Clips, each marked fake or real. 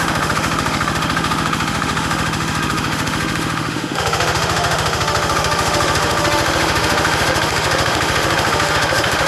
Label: fake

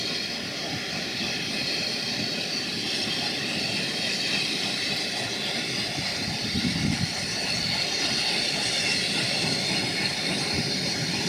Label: fake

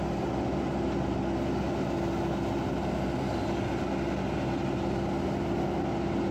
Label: real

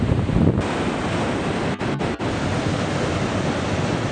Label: real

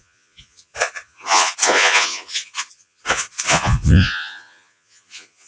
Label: fake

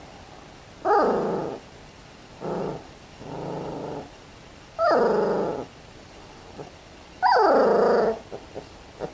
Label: real